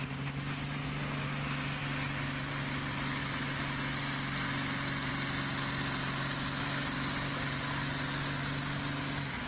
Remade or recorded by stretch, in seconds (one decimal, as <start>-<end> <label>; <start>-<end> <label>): 0.0-9.5 recorded